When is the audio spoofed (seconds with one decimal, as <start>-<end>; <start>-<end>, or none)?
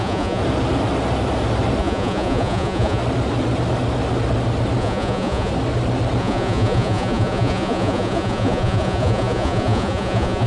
0.0-0.4; 1.8-3.0; 4.8-5.5; 6.2-10.5